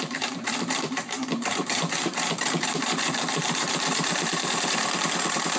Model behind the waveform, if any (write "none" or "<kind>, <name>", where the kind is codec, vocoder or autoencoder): vocoder, BigVGAN v2